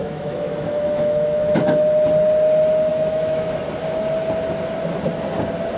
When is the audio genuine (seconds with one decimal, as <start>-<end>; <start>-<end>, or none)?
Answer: 1.6-2.9; 3.6-5.8